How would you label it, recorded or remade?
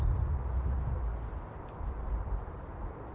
recorded